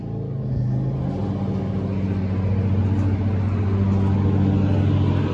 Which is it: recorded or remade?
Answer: recorded